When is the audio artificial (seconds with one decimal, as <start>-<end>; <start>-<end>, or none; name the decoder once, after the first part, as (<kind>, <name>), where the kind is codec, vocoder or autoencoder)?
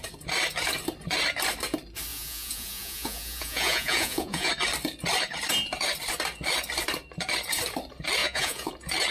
2.1-4.5 (vocoder, Vocos); 8.2-8.7